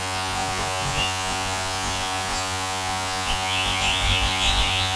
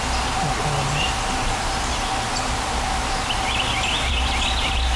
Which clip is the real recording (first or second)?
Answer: second